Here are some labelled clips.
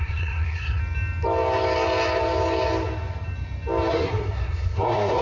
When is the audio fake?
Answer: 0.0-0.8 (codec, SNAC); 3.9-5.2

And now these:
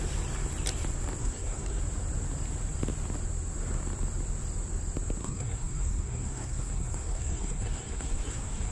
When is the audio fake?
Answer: 1.2-1.8 (codec, SNAC); 5.2-8.7

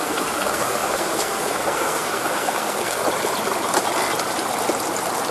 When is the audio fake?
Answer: 0.0-3.0 (codec, SNAC)